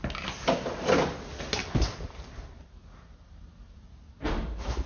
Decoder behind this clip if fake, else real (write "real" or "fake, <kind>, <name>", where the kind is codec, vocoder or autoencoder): real